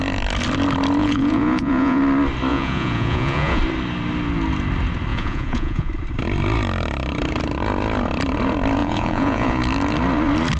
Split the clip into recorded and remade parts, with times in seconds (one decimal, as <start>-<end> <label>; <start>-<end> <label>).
0.0-1.0 recorded; 1.0-2.0 remade; 2.0-2.5 recorded; 2.5-3.6 remade; 3.6-5.1 recorded; 5.1-5.9 remade; 5.9-8.8 recorded; 8.8-9.6 remade; 9.6-10.6 recorded